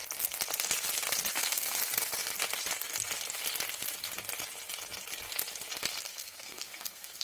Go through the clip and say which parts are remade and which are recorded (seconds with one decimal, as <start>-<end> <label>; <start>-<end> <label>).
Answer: 0.0-1.3 recorded; 1.3-1.8 remade; 1.8-6.0 recorded; 6.0-7.2 remade